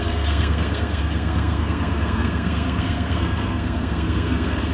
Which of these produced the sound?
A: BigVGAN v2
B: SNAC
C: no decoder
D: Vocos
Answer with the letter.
B